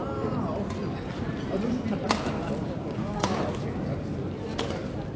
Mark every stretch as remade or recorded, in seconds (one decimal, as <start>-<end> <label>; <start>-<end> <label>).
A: 0.0-2.6 recorded; 2.6-3.4 remade; 3.4-5.2 recorded